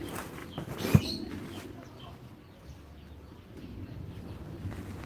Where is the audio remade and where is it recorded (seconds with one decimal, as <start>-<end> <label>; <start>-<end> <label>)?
0.0-5.1 recorded